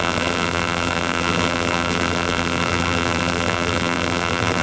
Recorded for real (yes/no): no